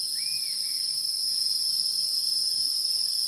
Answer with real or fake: fake